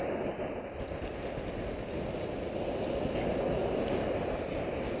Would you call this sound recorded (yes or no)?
yes